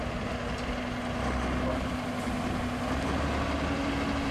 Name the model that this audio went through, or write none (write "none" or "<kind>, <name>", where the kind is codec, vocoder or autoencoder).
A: none